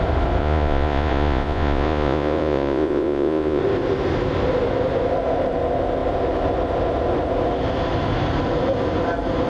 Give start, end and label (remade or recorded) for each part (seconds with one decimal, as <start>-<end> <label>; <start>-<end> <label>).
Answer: 0.0-0.4 recorded; 0.4-3.6 remade; 3.6-9.5 recorded